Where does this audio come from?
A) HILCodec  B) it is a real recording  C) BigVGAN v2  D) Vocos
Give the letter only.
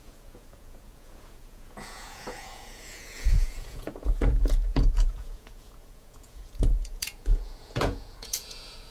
D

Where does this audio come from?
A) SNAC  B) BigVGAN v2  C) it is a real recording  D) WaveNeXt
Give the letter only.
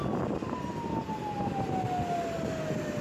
C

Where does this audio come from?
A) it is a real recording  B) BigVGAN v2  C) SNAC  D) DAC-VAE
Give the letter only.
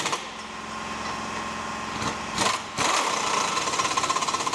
A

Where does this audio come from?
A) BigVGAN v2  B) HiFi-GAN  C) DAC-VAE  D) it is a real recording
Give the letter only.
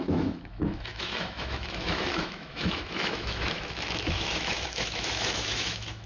C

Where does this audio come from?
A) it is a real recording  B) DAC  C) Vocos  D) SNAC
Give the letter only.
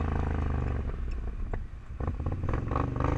A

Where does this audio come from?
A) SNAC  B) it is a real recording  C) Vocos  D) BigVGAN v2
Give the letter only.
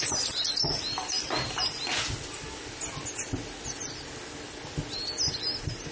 B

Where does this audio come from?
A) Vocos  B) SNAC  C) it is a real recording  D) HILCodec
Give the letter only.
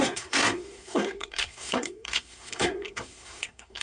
B